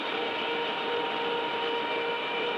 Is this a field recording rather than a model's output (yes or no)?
no